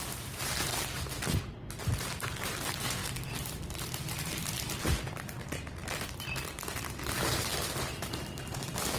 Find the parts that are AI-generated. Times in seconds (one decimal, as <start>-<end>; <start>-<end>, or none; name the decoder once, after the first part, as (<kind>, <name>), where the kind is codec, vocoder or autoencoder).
0.0-0.7 (vocoder, BigVGAN v2); 2.4-9.0